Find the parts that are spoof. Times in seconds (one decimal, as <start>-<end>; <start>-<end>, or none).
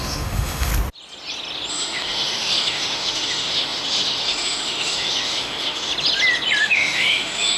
0.0-0.7; 1.7-5.9; 6.6-7.6